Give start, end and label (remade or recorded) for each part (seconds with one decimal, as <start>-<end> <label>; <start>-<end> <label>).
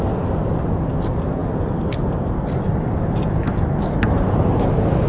0.0-5.1 recorded